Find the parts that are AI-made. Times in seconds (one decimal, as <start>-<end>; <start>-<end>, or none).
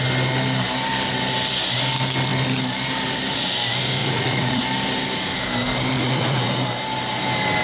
4.0-4.6; 5.9-6.5